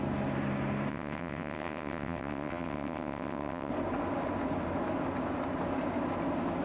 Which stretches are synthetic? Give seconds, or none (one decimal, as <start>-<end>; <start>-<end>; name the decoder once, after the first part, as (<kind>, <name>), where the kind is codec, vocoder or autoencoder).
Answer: 0.9-3.7 (vocoder, WaveNeXt)